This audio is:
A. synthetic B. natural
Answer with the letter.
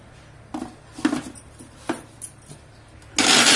B